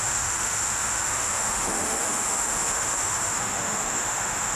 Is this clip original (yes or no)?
no